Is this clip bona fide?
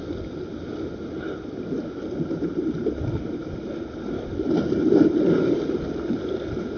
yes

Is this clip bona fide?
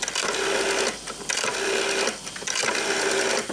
yes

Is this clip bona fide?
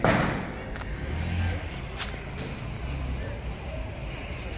yes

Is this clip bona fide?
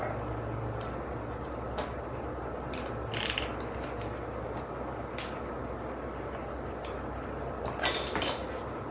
yes